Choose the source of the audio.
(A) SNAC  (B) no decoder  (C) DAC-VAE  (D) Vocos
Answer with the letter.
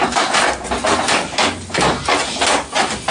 B